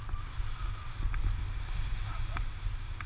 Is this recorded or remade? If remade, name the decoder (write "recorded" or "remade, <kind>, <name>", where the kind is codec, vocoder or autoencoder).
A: recorded